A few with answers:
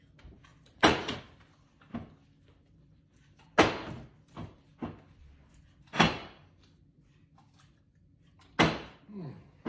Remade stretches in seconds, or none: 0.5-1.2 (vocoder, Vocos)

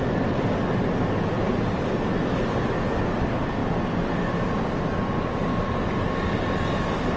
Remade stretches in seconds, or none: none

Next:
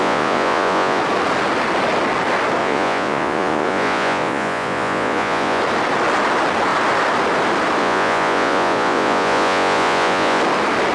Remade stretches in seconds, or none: 0.0-1.0 (vocoder, Vocos); 2.6-5.6; 7.8-10.4

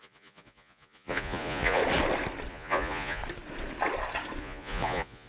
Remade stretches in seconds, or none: 0.0-1.8 (vocoder, Vocos); 2.5-3.2; 4.4-5.3